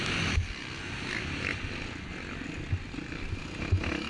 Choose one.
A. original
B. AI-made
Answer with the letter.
A